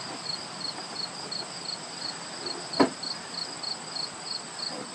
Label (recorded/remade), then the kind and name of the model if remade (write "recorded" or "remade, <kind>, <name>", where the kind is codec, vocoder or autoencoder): recorded